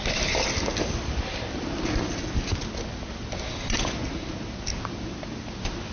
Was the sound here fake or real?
real